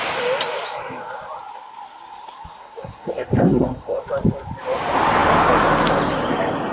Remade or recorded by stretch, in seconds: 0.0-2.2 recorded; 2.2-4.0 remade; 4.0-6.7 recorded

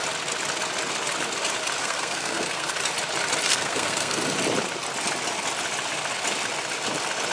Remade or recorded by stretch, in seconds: 0.0-1.8 recorded; 1.8-2.7 remade; 2.7-3.5 recorded; 3.5-4.2 remade; 4.2-7.3 recorded

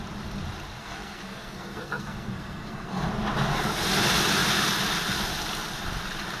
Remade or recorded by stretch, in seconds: 0.0-0.8 recorded; 0.8-3.1 remade; 3.1-6.4 recorded